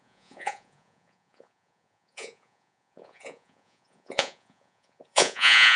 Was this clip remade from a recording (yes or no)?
yes